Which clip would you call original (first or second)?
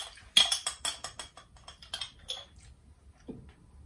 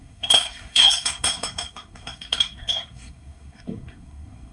first